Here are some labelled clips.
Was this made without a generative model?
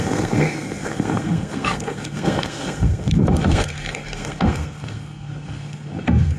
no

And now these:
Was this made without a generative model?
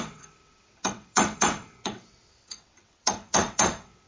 no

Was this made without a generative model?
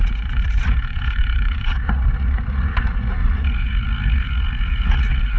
no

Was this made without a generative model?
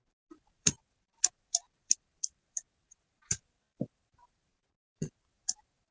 no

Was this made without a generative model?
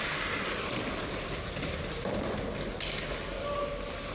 yes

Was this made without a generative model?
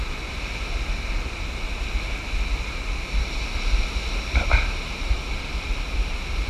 yes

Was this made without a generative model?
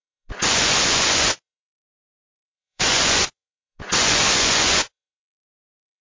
no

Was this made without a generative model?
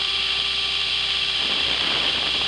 no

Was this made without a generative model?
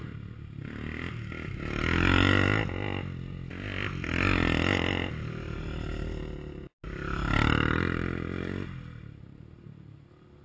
yes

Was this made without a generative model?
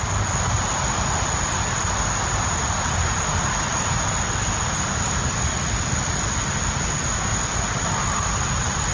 yes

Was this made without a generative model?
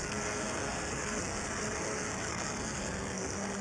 no